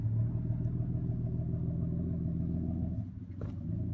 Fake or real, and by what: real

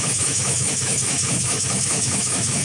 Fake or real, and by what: fake, autoencoder, DAC-VAE